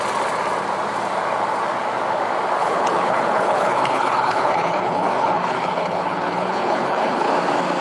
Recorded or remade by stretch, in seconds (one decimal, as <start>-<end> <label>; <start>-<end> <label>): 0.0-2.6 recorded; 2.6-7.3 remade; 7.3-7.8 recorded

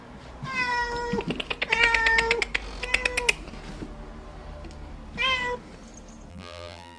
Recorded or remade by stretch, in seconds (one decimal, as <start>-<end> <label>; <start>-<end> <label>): 0.0-6.3 recorded; 6.3-7.0 remade

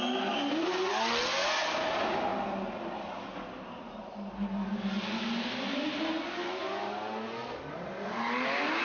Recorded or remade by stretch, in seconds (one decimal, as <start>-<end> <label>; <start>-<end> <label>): 0.0-8.8 recorded

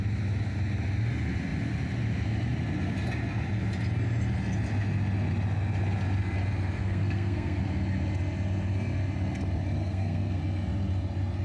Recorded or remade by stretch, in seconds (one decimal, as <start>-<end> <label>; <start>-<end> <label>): 0.0-6.8 recorded; 6.8-7.6 remade; 7.6-9.8 recorded; 9.8-10.4 remade; 10.4-11.4 recorded

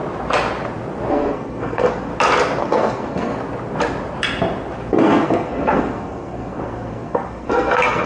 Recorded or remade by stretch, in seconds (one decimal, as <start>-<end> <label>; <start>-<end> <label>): 0.0-1.1 recorded; 1.1-2.1 remade; 2.1-2.6 recorded; 2.6-3.3 remade; 3.3-4.9 recorded; 4.9-8.1 remade

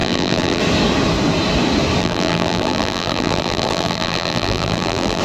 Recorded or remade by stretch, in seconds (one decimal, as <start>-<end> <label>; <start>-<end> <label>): 0.0-0.6 remade; 0.6-2.0 recorded; 2.0-5.2 remade